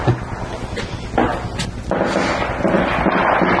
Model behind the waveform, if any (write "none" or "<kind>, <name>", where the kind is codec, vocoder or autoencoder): none